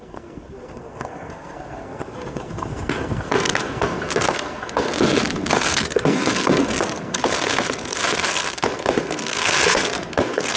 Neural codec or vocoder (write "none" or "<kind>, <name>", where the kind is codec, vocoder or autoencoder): codec, SNAC